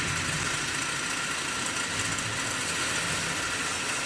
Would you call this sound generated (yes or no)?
no